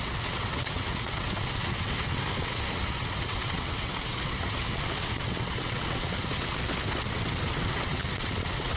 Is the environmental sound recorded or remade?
remade